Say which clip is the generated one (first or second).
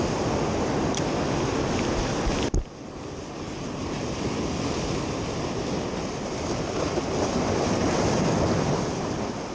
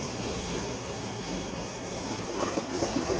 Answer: second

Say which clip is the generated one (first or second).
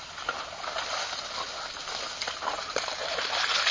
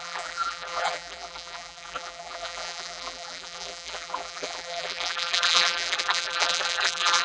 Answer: second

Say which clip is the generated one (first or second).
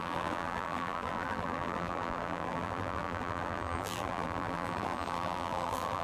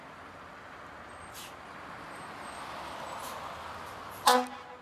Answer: first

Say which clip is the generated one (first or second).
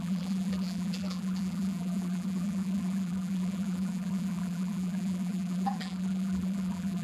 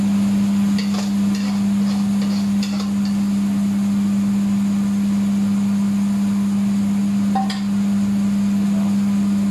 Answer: first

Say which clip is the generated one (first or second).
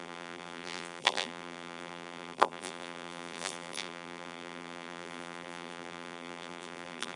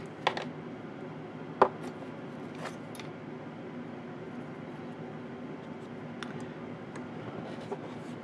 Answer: first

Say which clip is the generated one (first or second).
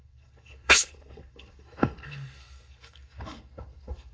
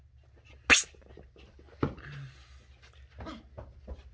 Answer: first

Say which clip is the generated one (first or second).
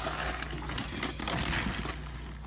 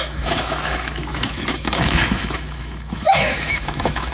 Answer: second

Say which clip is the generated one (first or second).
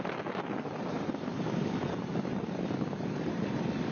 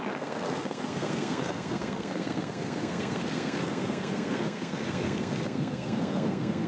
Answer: second